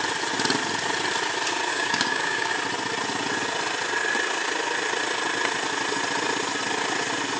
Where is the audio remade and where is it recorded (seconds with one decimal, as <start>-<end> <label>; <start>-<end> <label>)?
0.0-1.7 recorded; 1.7-2.5 remade; 2.5-7.4 recorded